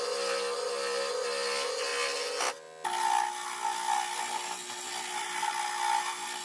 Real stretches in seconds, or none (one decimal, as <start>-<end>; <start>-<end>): 0.0-6.4